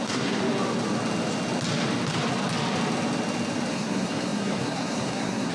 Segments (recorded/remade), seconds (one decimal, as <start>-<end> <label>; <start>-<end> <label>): 0.0-0.4 remade; 0.4-3.7 recorded; 3.7-5.5 remade